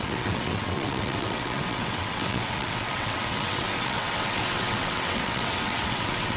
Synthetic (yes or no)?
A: yes